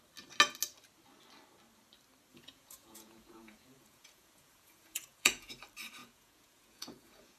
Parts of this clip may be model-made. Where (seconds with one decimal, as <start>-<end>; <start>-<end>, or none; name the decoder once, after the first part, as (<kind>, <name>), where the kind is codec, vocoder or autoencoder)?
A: 2.3-5.5 (vocoder, Vocos); 6.0-7.4